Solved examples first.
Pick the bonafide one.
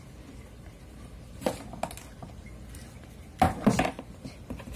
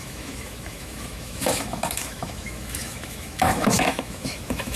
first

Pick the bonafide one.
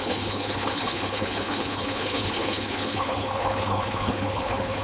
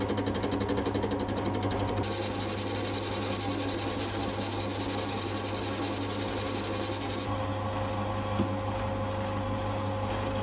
second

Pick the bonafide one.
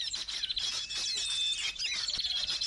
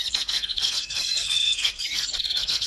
first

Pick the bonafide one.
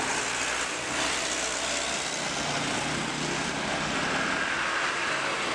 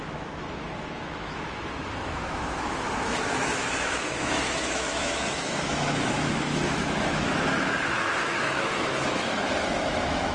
first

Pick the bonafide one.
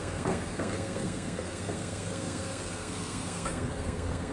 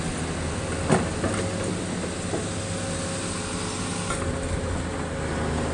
second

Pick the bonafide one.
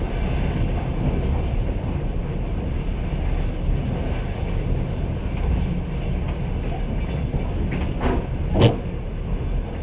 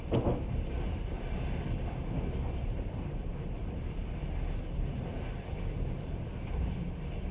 first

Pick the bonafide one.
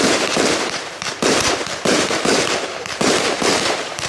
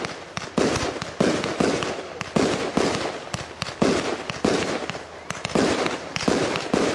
second